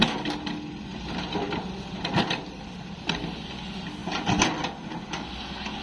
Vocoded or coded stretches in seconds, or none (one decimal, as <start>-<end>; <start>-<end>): 0.9-3.2